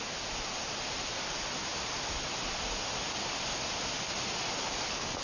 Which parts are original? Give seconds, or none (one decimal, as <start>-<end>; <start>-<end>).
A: 0.0-5.2